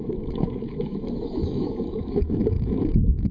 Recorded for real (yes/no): no